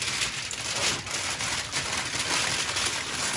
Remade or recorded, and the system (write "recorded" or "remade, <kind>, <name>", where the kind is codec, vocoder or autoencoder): recorded